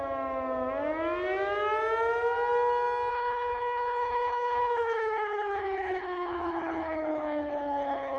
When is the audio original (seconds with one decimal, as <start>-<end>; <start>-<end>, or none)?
0.0-3.1